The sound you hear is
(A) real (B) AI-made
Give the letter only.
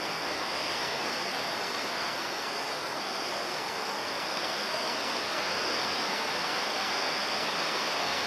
B